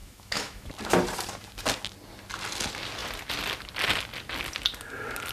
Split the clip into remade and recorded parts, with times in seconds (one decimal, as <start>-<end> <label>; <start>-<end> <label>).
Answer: 0.0-0.7 remade; 0.7-5.3 recorded